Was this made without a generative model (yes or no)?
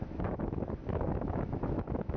no